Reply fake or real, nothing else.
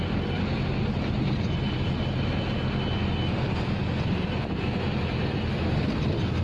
real